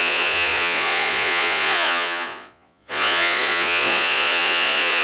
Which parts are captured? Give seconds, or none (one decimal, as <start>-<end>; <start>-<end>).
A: none